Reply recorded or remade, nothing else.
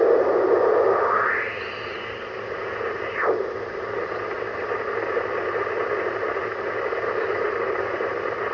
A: recorded